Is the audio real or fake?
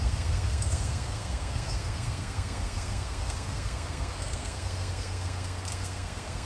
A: fake